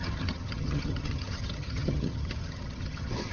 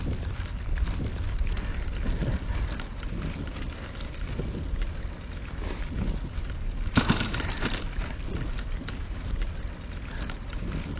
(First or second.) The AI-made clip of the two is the first